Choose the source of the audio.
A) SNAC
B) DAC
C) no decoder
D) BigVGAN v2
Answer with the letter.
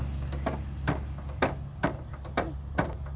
C